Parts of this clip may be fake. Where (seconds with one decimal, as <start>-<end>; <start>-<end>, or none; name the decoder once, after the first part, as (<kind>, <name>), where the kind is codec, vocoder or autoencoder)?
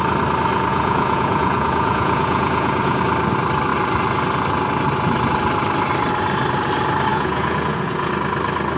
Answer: 0.7-3.0 (vocoder, Vocos); 7.1-8.1